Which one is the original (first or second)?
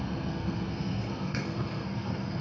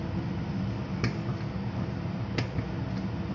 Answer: second